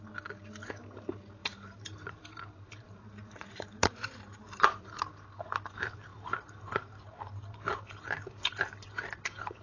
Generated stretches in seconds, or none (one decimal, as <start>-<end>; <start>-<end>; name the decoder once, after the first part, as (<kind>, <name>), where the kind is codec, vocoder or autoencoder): 1.4-4.9 (vocoder, BigVGAN v2); 6.1-7.2